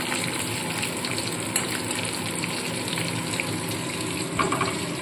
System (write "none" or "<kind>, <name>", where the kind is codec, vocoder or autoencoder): none